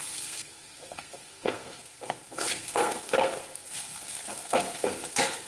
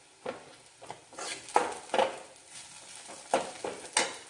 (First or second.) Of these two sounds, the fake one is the first